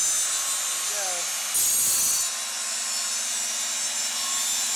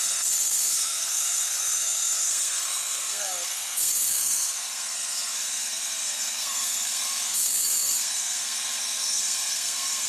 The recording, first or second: first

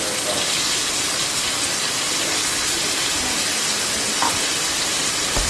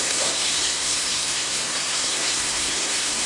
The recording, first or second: first